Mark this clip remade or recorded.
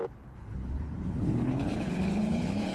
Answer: remade